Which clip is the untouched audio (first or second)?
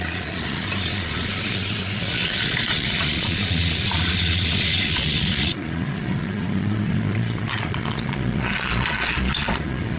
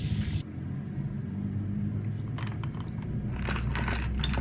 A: second